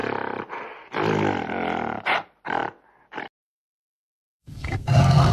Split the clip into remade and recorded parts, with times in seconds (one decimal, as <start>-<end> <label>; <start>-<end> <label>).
0.0-4.2 recorded; 4.2-5.3 remade